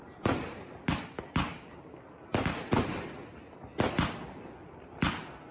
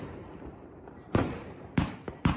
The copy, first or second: second